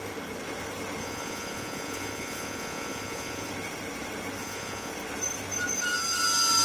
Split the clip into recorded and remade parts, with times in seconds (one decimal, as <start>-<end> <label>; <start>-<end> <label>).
0.0-1.0 recorded; 1.0-3.5 remade; 3.5-4.4 recorded; 4.4-4.9 remade; 4.9-6.6 recorded

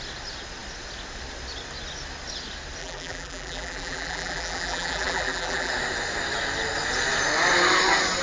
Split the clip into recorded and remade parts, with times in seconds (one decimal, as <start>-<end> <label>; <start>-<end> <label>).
0.0-2.8 recorded; 2.8-5.7 remade; 5.7-8.2 recorded

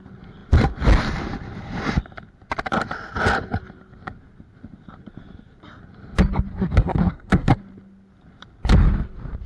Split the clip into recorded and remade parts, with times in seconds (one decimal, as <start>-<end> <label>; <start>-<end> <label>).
0.0-6.5 recorded; 6.5-7.6 remade; 7.6-9.5 recorded